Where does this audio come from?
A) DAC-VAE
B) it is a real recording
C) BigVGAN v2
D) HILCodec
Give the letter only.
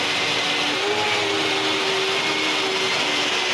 B